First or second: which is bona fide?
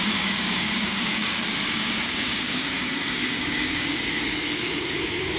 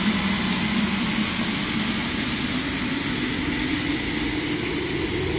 second